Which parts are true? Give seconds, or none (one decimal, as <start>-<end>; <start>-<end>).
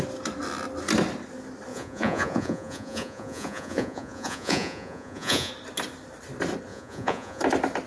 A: 0.0-1.7; 5.5-6.7; 7.4-7.9